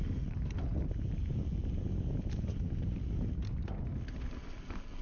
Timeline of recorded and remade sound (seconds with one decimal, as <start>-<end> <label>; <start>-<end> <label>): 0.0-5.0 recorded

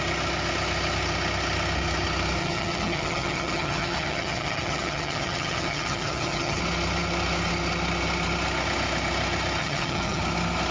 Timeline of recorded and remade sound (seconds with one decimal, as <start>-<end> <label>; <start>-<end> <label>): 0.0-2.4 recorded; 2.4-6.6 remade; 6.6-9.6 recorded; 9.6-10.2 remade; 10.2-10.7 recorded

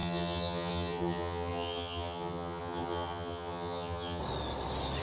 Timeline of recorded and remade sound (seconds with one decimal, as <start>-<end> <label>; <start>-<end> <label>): 0.0-4.2 remade; 4.2-5.0 recorded